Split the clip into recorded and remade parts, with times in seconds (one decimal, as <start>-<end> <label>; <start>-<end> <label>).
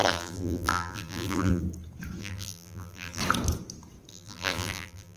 0.0-1.6 remade; 1.6-2.2 recorded; 2.2-3.2 remade; 3.2-4.1 recorded; 4.1-5.2 remade